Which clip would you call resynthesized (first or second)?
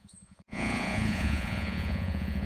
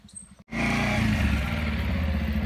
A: first